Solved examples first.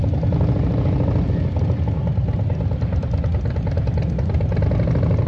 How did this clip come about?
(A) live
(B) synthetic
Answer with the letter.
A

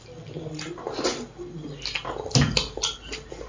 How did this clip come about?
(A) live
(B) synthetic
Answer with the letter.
A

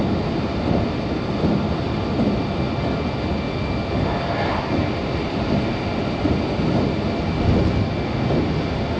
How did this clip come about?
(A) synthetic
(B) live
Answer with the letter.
B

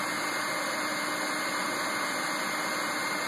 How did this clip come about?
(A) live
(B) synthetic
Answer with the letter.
A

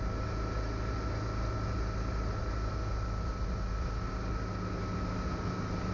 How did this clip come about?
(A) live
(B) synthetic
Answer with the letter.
A